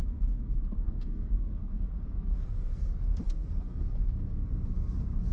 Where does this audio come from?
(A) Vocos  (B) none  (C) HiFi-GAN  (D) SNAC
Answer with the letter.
D